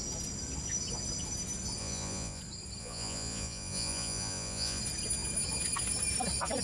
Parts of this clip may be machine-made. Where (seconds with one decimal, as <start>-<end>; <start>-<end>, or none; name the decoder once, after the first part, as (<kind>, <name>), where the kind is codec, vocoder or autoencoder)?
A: 1.8-2.4 (vocoder, Vocos); 2.8-4.8